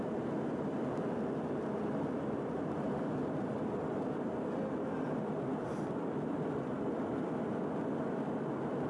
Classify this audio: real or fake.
fake